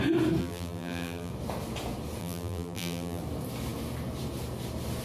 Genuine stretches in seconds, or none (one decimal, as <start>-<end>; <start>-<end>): 0.0-0.4; 1.3-2.2; 3.2-5.0